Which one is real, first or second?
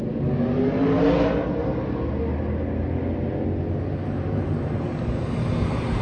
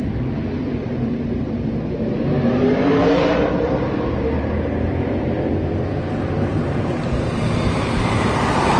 first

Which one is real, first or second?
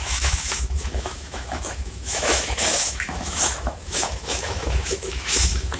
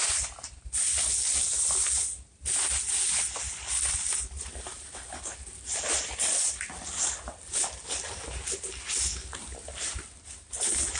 second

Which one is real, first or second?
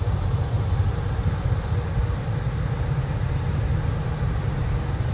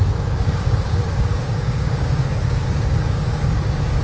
first